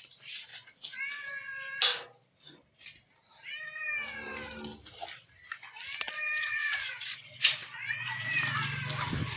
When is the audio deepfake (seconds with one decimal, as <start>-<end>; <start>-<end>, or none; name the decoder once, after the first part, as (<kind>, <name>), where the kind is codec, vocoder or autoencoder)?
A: 0.5-1.0 (vocoder, Vocos); 6.4-8.3